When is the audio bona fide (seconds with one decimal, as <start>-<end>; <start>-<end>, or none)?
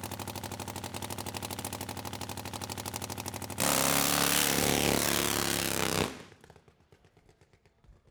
0.0-8.1